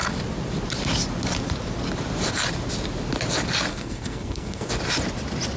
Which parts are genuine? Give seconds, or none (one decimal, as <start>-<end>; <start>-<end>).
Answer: 0.0-3.7; 4.7-5.6